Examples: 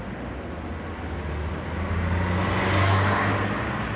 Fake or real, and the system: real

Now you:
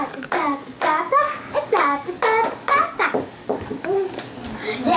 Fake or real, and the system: fake, codec, DAC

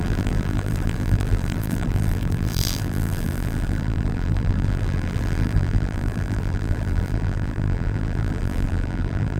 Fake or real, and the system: fake, vocoder, BigVGAN v2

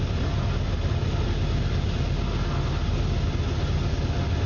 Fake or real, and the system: real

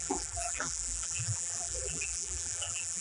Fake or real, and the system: fake, vocoder, BigVGAN v2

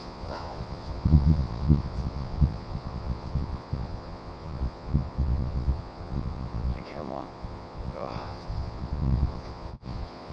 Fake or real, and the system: fake, vocoder, Vocos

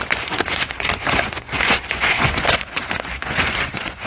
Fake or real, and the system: fake, vocoder, Vocos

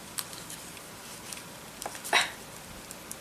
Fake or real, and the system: real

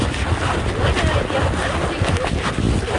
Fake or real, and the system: real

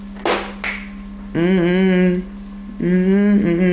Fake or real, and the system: real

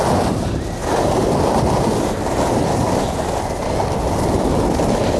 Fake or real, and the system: real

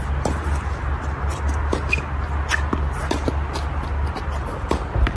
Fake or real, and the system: real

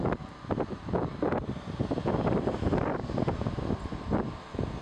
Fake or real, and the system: real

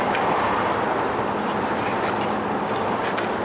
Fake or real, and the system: real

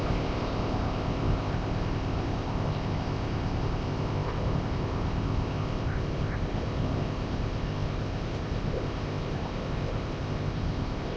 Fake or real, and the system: fake, codec, ZipCodec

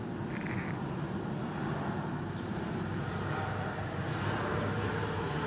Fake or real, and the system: real